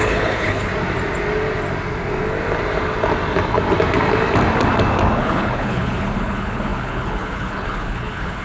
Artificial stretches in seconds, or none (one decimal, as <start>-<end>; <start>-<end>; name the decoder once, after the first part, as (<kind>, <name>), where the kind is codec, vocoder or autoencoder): 0.0-0.7 (codec, HILCodec); 5.2-8.4